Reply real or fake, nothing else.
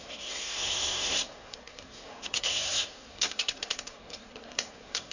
fake